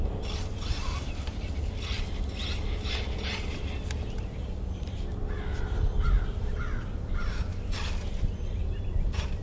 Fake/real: real